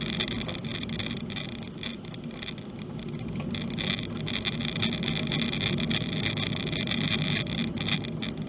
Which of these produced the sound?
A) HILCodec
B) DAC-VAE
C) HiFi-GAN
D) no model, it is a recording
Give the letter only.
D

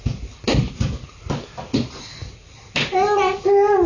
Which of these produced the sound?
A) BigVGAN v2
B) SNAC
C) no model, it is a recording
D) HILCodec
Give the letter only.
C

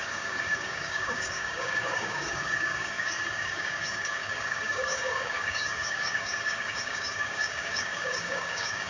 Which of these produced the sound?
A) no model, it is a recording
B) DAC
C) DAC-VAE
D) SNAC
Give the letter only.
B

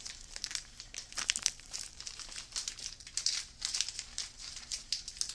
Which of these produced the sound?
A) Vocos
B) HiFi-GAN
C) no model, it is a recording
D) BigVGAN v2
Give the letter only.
D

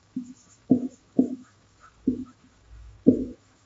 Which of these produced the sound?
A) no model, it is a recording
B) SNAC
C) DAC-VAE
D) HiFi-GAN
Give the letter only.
C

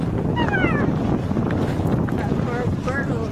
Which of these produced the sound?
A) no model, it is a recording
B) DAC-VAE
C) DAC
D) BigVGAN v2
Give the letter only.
A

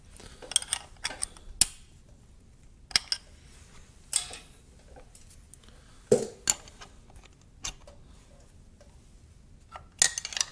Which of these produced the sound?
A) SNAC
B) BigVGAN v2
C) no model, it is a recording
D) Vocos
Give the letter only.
C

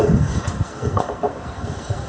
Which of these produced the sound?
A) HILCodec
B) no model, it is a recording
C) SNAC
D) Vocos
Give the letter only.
C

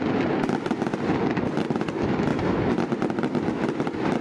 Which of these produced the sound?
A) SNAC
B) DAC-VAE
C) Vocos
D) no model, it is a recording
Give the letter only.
D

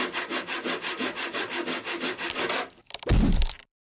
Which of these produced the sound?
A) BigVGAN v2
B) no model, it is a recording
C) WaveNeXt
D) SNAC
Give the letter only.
B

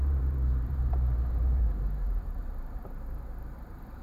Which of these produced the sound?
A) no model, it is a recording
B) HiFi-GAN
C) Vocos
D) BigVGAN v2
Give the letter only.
D